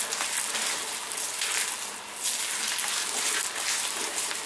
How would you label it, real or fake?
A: real